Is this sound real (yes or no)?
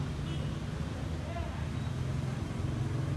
yes